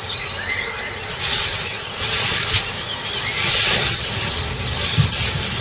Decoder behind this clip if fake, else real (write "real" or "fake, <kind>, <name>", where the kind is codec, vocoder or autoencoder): real